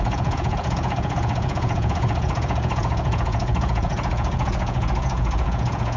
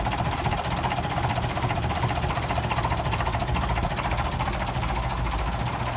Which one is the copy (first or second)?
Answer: first